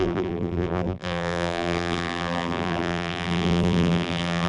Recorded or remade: remade